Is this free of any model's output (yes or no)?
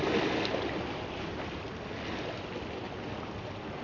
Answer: yes